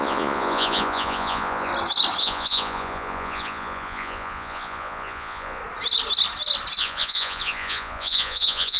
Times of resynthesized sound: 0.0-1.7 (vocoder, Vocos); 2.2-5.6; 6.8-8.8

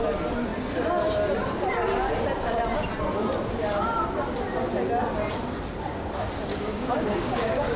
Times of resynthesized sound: 6.5-7.8 (codec, DAC)

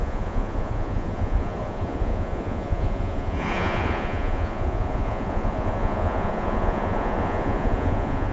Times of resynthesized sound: 0.0-8.3 (vocoder, Vocos)

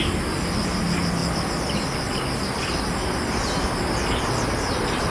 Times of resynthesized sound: none

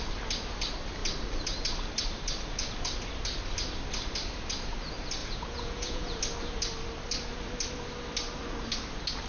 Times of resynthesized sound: 5.2-6.2 (vocoder, Vocos)

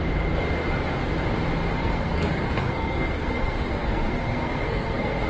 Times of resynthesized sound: 1.8-5.3 (codec, SNAC)

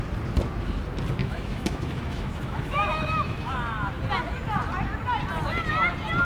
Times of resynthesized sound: 1.2-3.5 (autoencoder, DAC-VAE)